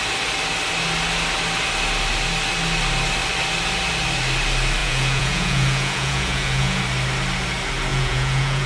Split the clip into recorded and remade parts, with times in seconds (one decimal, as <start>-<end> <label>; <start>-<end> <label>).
0.0-4.8 recorded; 4.8-6.8 remade; 6.8-7.9 recorded; 7.9-8.7 remade